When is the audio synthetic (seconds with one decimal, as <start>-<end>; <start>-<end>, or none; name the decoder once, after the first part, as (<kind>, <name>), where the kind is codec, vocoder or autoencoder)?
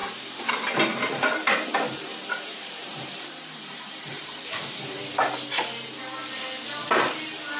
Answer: 0.0-0.5 (vocoder, BigVGAN v2); 0.9-5.0